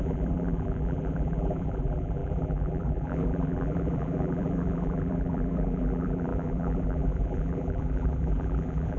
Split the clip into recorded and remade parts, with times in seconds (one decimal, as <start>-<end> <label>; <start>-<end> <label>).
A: 0.0-9.0 remade